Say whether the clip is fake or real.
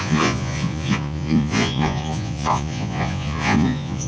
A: fake